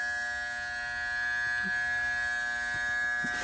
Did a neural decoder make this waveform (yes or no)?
no